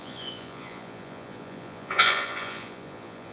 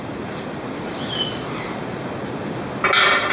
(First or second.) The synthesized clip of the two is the first